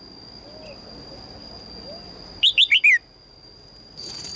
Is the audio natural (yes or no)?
yes